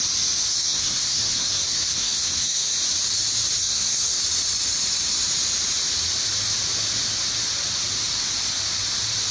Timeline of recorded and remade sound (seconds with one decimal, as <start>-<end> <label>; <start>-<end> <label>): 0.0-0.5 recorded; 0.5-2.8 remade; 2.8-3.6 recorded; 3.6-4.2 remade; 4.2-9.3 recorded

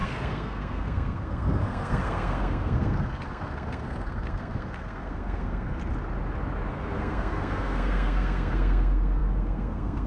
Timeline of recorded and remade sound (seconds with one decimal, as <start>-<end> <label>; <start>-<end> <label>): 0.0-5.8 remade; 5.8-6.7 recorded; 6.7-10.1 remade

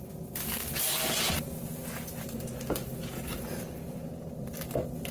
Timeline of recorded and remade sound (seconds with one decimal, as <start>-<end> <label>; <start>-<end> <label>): 0.0-5.1 recorded